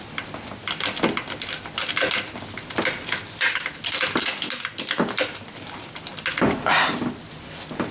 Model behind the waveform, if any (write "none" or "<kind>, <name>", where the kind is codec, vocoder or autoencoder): none